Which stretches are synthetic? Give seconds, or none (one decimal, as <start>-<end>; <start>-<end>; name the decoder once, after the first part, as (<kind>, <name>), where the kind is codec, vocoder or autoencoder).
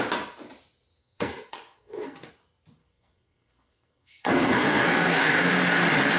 1.0-2.3 (codec, SNAC); 2.8-5.5